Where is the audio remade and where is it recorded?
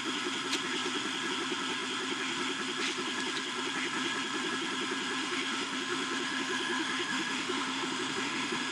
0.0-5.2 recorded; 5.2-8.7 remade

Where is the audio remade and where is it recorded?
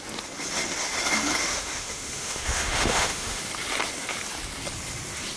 0.0-1.4 recorded; 1.4-3.4 remade; 3.4-5.4 recorded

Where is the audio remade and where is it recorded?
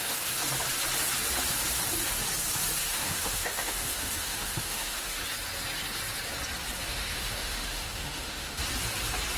0.0-0.4 remade; 0.4-2.9 recorded; 2.9-5.2 remade; 5.2-6.8 recorded; 6.8-8.6 remade; 8.6-9.4 recorded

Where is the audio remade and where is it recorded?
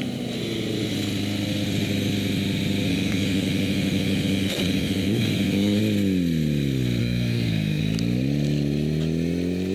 0.0-2.9 recorded; 2.9-5.8 remade; 5.8-7.0 recorded; 7.0-7.8 remade; 7.8-9.7 recorded